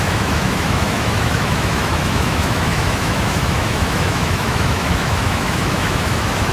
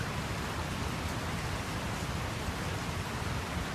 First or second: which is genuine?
second